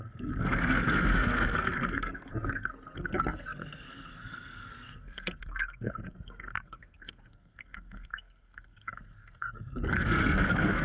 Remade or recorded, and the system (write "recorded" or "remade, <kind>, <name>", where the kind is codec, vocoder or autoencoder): remade, codec, SNAC